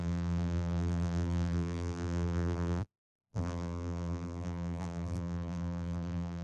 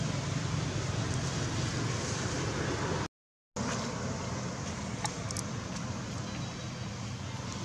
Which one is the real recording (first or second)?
second